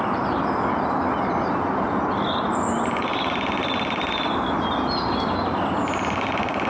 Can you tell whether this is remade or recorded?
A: recorded